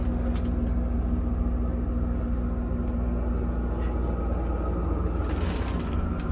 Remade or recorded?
recorded